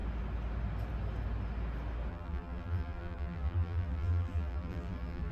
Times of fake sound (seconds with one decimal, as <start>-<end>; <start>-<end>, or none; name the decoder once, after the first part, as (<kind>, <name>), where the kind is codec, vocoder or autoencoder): 2.1-5.3 (vocoder, BigVGAN v2)